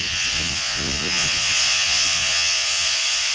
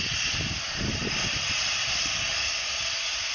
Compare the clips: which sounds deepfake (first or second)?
first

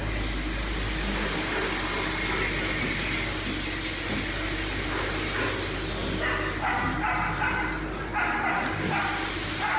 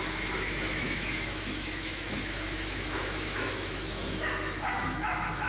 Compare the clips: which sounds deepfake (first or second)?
second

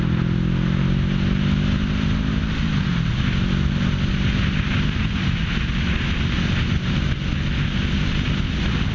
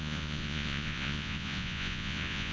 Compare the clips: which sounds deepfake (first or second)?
second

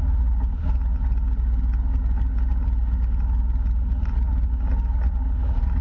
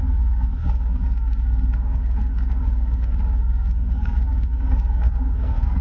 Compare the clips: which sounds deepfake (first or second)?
second